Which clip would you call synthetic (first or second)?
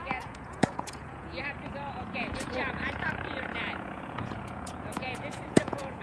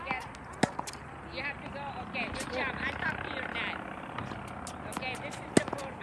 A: first